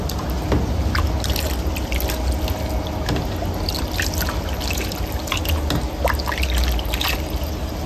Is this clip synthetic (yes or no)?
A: no